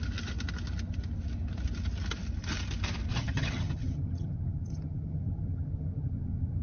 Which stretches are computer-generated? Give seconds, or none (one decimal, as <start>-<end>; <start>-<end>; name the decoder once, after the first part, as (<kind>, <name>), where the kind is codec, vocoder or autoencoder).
3.1-6.6 (vocoder, HiFi-GAN)